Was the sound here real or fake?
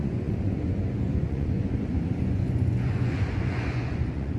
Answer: fake